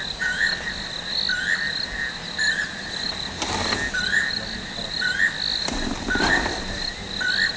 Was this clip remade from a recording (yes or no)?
no